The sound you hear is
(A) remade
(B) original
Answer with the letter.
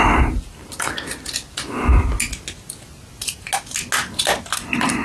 B